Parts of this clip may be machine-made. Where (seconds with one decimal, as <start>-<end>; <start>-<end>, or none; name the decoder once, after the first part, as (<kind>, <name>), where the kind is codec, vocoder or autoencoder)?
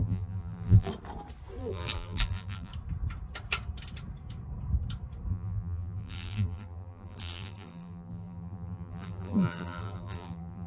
0.0-0.9 (vocoder, BigVGAN v2); 1.6-2.7; 5.3-10.7